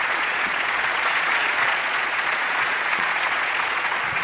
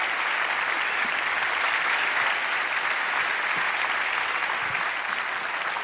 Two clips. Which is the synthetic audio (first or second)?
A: first